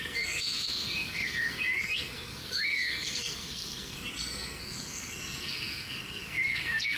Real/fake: fake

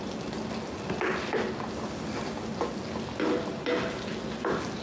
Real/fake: real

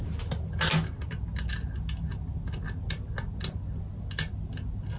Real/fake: real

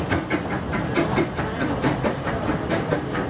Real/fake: real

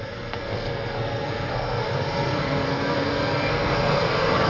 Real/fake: fake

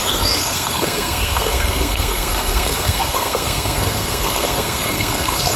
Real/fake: fake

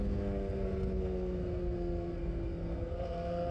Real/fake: fake